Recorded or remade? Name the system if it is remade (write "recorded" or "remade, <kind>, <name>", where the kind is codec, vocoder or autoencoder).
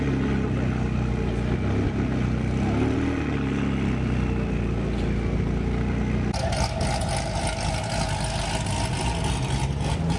recorded